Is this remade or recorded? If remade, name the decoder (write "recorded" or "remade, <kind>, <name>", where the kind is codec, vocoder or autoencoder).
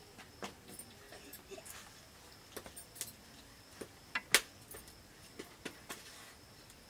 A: recorded